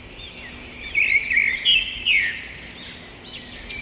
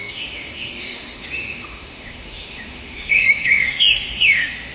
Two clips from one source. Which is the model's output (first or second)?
second